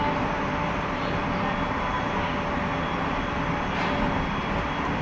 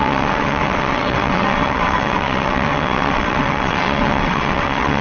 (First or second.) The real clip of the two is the first